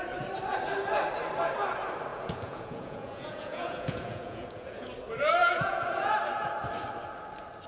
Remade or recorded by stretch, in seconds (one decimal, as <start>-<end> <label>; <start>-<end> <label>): 0.0-2.1 recorded; 2.1-4.9 remade; 4.9-5.4 recorded; 5.4-6.1 remade; 6.1-7.7 recorded